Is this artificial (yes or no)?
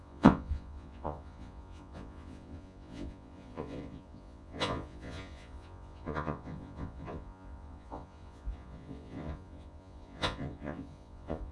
yes